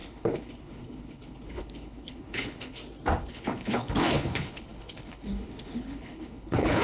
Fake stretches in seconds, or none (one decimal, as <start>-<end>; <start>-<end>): 0.0-2.8; 3.3-6.8

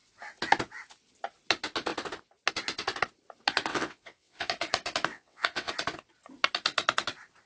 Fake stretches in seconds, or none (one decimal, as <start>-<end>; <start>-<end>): 3.7-4.5; 5.1-5.7

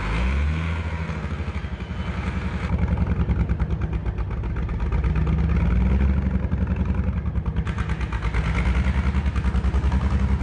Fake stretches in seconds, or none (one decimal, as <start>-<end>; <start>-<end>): none

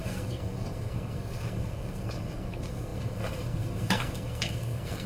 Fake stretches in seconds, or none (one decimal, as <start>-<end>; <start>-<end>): 0.0-5.1